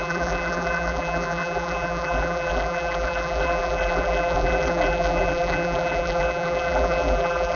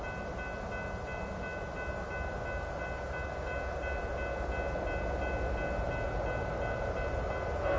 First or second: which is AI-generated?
first